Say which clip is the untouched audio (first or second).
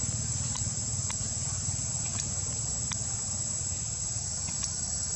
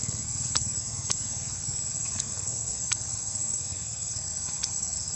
first